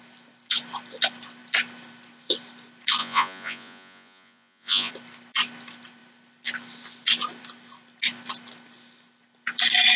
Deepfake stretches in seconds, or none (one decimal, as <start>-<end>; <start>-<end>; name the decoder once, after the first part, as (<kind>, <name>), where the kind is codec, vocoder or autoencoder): 3.0-4.9 (vocoder, Vocos)